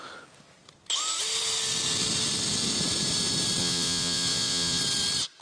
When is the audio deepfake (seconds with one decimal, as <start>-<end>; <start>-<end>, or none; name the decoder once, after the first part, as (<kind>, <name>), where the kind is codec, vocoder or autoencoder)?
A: 3.6-4.8 (vocoder, Vocos)